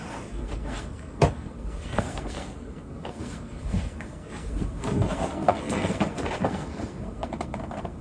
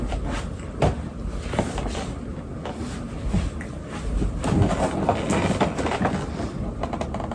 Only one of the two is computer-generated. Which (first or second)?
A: first